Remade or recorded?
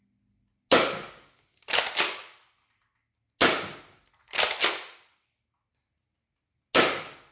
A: recorded